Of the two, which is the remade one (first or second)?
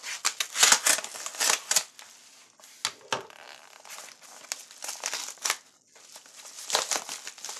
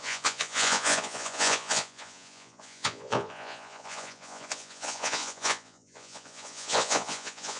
second